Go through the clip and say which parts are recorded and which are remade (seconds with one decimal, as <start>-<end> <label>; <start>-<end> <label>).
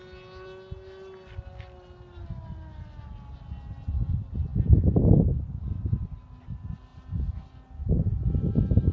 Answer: 0.0-8.9 recorded